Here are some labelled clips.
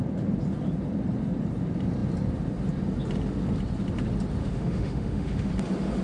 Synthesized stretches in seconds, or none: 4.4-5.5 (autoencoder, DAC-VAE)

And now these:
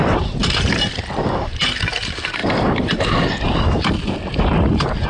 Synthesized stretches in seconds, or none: none